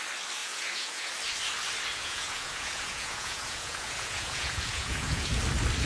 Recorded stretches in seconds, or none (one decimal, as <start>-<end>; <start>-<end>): 0.0-0.4; 1.1-1.9; 5.4-5.9